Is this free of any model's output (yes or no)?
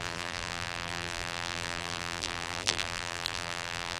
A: no